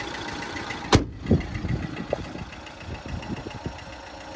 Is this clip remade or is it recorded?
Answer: recorded